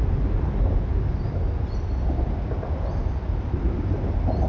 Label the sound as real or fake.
real